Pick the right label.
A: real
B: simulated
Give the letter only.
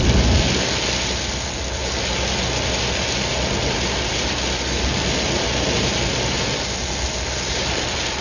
A